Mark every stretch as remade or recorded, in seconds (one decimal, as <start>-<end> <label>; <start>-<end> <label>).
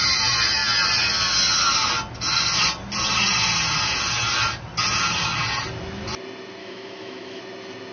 0.0-6.6 recorded; 6.6-7.4 remade; 7.4-7.9 recorded